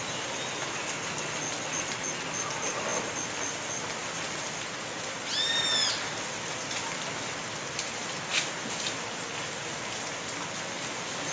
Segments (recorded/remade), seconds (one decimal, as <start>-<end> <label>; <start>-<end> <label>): 0.0-11.3 recorded